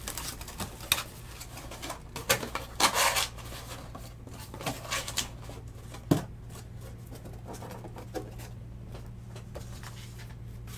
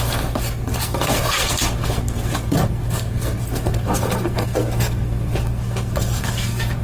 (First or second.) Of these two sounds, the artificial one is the second